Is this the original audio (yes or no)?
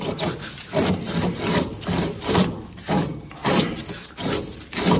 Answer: yes